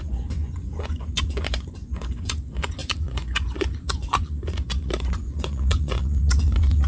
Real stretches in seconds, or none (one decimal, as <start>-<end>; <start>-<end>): none